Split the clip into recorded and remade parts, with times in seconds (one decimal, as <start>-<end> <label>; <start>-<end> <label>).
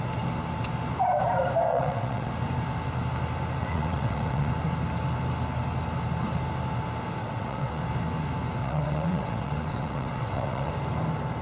0.0-1.7 recorded; 1.7-2.3 remade; 2.3-3.6 recorded; 3.6-4.5 remade; 4.5-7.2 recorded; 7.2-7.8 remade; 7.8-8.6 recorded; 8.6-10.7 remade; 10.7-11.4 recorded